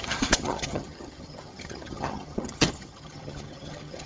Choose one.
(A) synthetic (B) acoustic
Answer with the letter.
A